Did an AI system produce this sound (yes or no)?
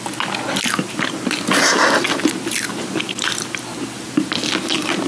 no